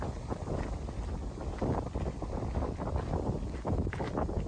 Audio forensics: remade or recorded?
recorded